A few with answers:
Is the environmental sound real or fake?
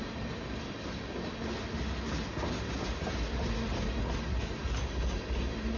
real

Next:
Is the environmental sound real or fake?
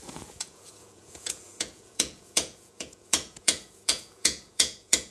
fake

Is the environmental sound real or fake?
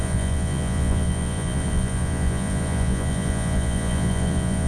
fake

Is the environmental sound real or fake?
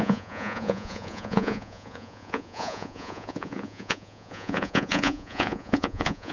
fake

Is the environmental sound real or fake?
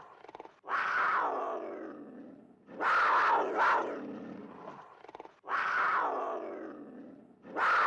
real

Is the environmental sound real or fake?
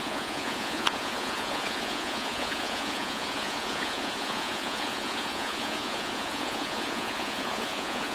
fake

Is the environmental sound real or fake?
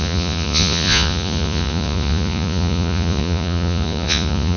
fake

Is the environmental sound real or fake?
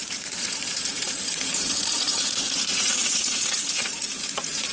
fake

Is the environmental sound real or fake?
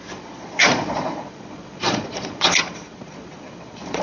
fake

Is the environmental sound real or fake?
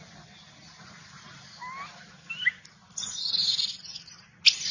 real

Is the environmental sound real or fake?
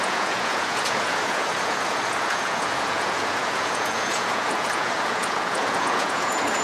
fake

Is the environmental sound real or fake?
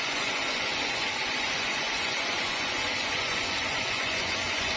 fake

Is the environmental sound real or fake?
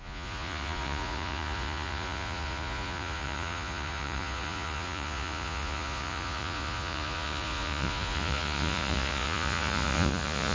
fake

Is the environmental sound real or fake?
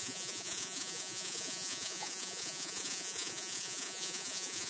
fake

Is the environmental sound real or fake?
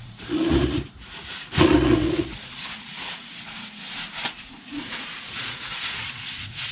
fake